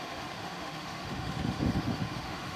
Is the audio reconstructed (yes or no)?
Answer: yes